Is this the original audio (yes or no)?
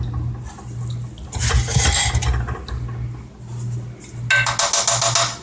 yes